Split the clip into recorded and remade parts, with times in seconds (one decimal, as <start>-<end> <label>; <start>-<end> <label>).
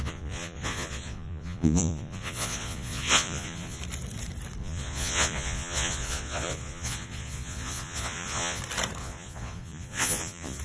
0.0-3.8 remade; 3.8-4.6 recorded; 4.6-8.6 remade; 8.6-9.0 recorded; 9.0-10.6 remade